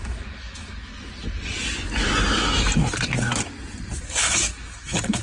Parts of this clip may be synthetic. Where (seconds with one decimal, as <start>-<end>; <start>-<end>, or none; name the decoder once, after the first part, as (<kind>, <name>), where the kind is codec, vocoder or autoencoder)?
0.0-0.9 (autoencoder, DAC-VAE); 4.0-5.2